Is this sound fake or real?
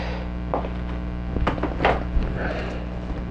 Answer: real